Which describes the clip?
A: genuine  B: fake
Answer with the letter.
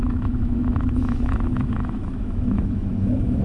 B